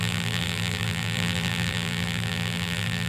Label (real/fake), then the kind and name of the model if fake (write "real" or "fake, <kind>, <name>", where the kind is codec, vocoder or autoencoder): fake, vocoder, BigVGAN v2